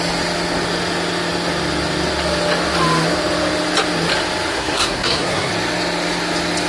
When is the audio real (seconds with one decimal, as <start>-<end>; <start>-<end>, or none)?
0.0-4.5; 5.5-6.7